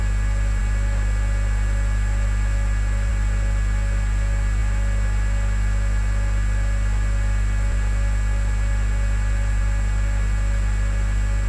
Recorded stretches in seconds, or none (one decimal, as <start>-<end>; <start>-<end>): 0.0-11.5